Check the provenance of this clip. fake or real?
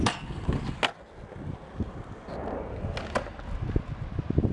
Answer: real